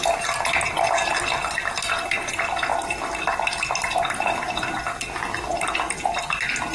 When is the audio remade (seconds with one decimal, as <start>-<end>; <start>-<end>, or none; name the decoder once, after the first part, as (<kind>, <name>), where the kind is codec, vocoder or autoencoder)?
none